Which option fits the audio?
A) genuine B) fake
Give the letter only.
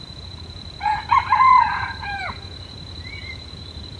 B